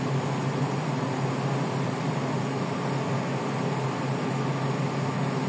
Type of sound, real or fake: real